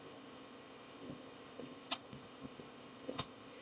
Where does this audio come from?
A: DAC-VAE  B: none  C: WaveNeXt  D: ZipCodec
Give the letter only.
D